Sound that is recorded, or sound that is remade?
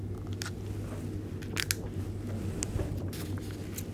recorded